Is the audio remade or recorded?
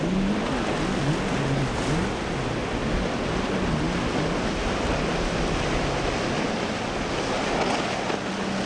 recorded